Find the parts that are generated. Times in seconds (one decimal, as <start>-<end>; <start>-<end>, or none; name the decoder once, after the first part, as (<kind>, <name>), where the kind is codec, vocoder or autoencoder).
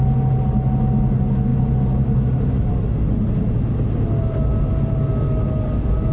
none